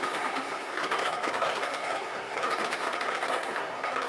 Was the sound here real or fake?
fake